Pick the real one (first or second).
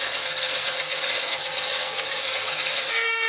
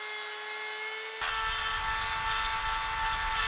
second